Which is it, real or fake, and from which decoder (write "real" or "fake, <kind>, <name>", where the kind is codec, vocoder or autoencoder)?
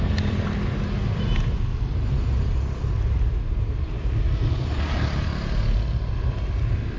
real